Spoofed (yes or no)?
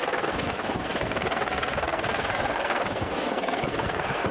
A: yes